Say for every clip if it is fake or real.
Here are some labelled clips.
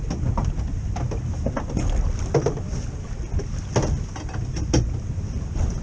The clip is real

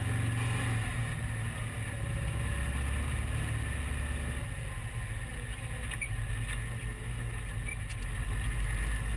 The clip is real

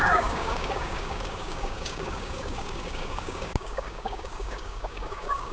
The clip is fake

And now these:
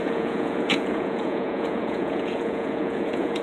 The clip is fake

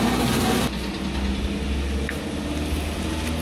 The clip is real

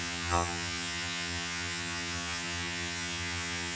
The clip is fake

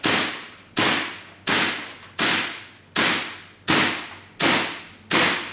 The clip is real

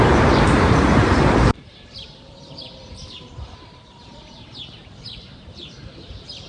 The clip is fake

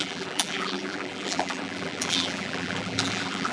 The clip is fake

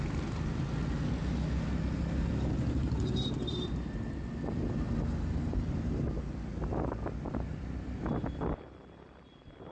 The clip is real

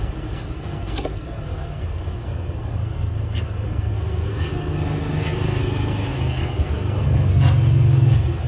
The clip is fake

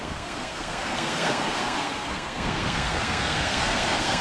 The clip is fake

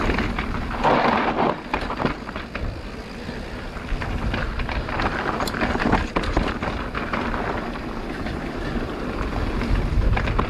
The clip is real